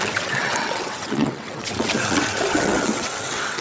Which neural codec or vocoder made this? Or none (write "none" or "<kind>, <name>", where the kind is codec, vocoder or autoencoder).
vocoder, WaveNeXt